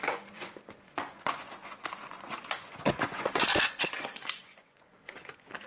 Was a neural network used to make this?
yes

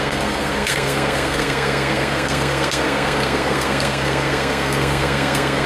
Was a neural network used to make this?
yes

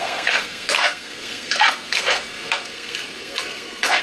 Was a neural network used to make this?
yes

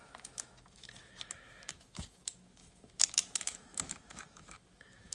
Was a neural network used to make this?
yes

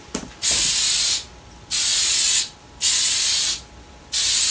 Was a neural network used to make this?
no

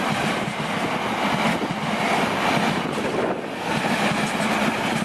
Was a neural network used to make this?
no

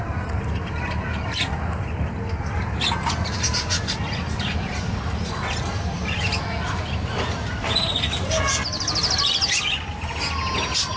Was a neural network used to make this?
no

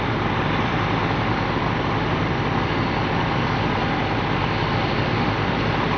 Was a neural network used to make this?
no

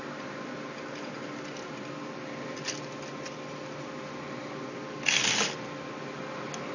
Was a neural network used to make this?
no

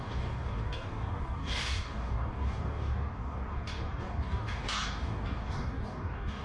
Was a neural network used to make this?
yes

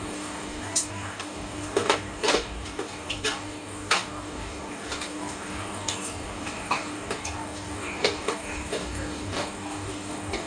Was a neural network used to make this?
yes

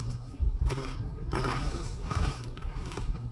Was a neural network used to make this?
yes